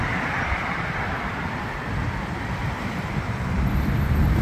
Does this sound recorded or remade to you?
recorded